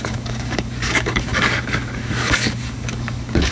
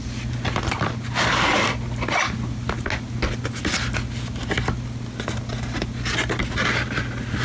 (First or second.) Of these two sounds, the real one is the second